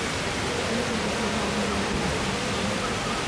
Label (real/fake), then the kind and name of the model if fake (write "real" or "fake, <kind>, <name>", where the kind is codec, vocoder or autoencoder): real